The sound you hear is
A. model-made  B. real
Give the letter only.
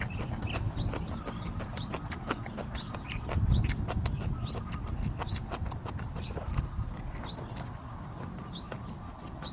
B